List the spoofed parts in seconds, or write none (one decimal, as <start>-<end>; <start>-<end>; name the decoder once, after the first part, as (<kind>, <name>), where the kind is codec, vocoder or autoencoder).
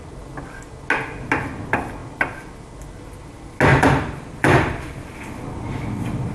3.7-6.3 (vocoder, BigVGAN v2)